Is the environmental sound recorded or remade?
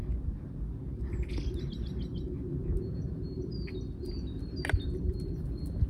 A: recorded